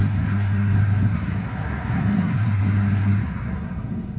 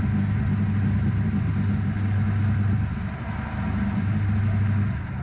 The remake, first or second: first